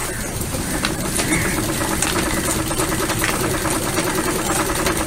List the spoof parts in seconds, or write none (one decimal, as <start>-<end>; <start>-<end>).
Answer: 0.0-5.1